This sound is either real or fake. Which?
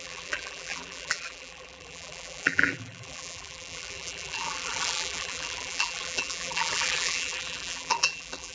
fake